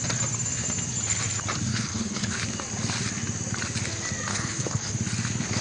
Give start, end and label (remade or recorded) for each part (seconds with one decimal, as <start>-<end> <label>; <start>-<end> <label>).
0.0-1.7 recorded; 1.7-2.3 remade; 2.3-4.3 recorded; 4.3-4.9 remade; 4.9-5.6 recorded